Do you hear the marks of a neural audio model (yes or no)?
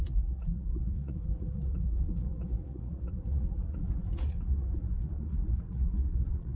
yes